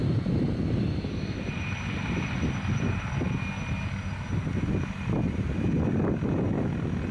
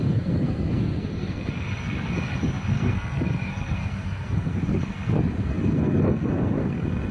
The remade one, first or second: second